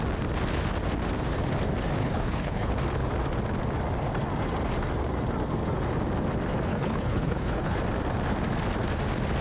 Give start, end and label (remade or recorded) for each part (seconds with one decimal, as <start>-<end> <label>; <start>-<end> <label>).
0.0-2.0 recorded; 2.0-2.7 remade; 2.7-6.7 recorded; 6.7-7.8 remade; 7.8-9.4 recorded